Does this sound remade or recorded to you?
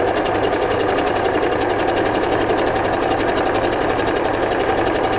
recorded